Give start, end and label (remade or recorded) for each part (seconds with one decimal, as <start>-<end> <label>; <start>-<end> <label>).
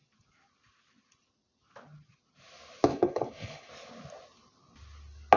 0.0-2.9 recorded; 2.9-3.7 remade; 3.7-5.4 recorded